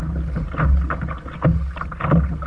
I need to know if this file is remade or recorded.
recorded